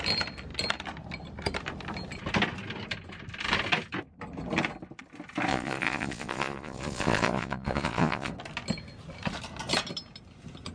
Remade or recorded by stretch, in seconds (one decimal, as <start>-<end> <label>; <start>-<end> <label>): 0.0-5.5 recorded; 5.5-8.3 remade; 8.3-10.7 recorded